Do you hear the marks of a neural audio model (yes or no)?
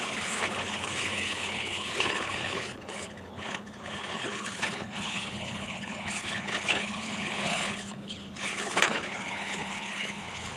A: yes